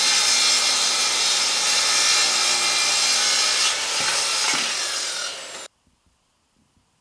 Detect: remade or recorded recorded